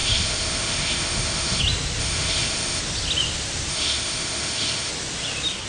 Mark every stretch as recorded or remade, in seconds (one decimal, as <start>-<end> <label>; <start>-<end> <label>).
0.0-1.6 remade; 1.6-2.0 recorded; 2.0-2.8 remade; 2.8-3.7 recorded; 3.7-4.9 remade; 4.9-5.7 recorded